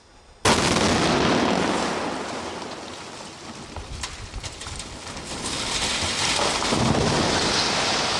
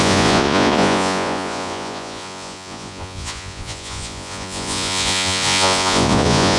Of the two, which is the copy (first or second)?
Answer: second